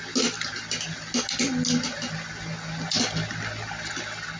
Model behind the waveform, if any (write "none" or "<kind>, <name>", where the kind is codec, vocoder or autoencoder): none